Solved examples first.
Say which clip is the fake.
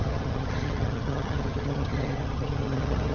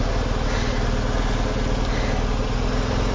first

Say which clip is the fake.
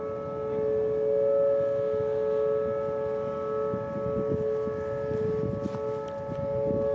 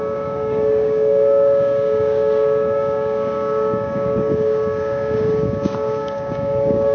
second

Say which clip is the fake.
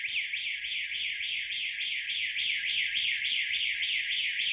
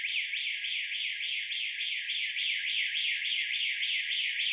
second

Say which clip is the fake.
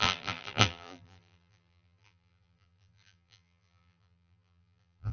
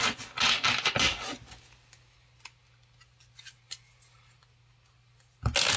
first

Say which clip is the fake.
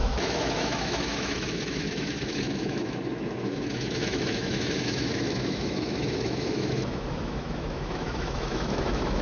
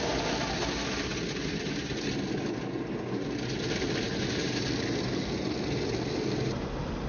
first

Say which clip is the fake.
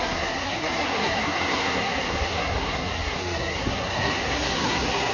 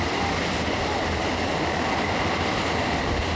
first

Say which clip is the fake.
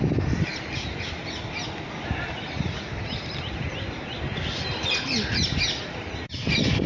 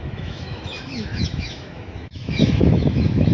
second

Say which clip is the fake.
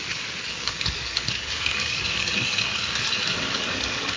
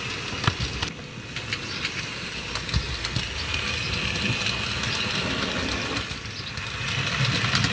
first